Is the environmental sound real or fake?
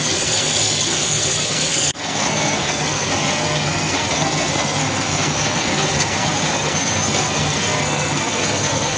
fake